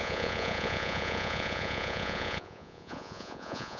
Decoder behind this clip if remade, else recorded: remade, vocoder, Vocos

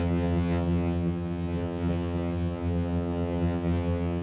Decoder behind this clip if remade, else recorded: remade, vocoder, HiFi-GAN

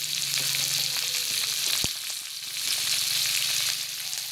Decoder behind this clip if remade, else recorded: recorded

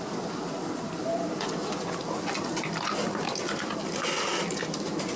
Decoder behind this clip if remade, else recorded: recorded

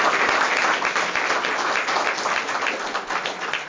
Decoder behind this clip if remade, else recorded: recorded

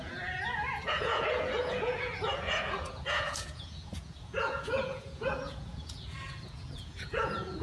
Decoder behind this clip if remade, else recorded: remade, vocoder, Vocos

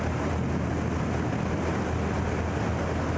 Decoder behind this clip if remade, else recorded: recorded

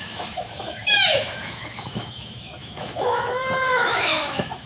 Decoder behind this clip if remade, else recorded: remade, autoencoder, DAC-VAE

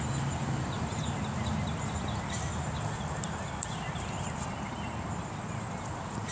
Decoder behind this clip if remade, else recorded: recorded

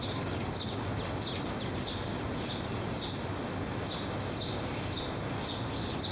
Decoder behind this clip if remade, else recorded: recorded